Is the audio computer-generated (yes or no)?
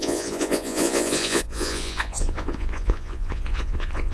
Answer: yes